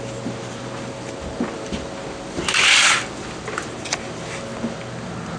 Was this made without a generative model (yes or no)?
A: yes